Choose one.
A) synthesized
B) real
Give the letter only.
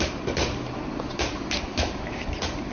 B